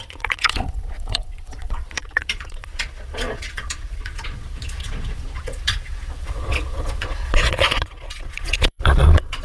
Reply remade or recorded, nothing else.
remade